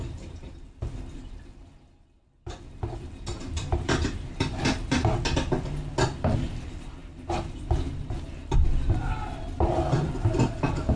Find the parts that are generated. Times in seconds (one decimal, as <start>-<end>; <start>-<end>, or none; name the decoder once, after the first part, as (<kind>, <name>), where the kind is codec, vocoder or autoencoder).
3.3-5.1 (vocoder, BigVGAN v2)